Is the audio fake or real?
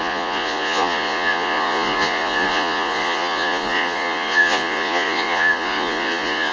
fake